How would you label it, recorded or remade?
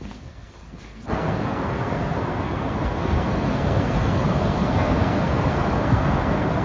remade